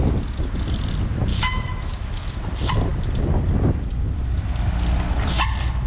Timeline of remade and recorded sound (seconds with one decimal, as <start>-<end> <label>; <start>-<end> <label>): 0.0-1.3 recorded; 1.3-2.3 remade; 2.3-5.9 recorded